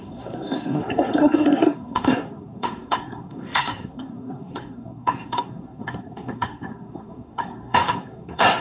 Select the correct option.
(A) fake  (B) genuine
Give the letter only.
A